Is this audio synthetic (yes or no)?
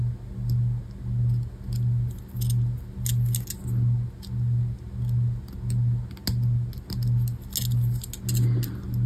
no